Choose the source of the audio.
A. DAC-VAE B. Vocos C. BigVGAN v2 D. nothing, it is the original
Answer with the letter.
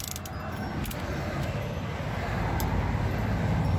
D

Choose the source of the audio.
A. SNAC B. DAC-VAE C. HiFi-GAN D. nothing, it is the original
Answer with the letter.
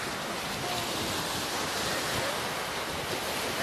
D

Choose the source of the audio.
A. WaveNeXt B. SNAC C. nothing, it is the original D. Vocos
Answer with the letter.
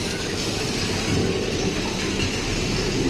C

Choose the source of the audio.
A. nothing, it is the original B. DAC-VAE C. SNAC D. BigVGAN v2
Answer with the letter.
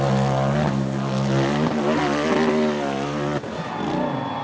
A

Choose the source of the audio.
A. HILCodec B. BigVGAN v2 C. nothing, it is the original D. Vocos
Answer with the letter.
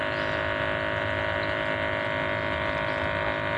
C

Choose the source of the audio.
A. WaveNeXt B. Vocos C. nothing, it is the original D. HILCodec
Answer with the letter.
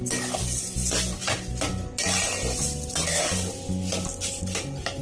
C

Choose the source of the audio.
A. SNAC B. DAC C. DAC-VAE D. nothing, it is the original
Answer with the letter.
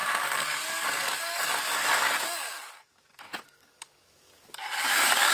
B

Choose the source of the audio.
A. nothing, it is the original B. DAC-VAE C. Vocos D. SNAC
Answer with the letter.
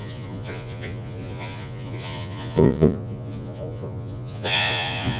C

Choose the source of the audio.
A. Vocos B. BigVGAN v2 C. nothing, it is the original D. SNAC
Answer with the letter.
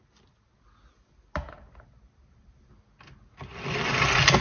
C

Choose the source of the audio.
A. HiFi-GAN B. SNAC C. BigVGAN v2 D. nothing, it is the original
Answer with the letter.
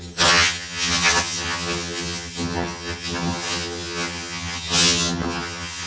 A